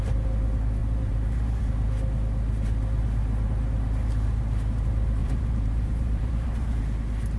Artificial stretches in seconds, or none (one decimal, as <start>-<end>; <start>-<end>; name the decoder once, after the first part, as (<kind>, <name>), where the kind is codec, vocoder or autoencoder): 0.8-1.6 (vocoder, BigVGAN v2); 5.2-6.8